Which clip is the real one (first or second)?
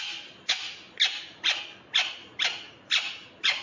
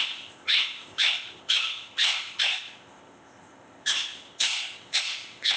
first